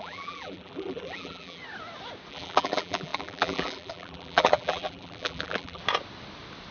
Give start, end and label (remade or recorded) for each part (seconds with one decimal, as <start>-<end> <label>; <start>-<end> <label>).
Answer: 0.0-1.6 remade; 1.6-2.3 recorded; 2.3-5.8 remade; 5.8-6.7 recorded